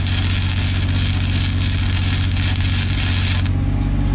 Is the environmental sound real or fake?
real